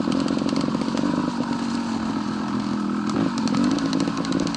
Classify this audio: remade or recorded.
recorded